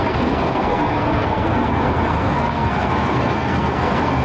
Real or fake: fake